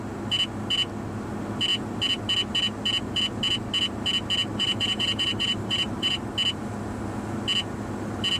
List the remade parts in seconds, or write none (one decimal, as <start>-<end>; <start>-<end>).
4.5-6.3